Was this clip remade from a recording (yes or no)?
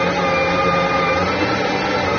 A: no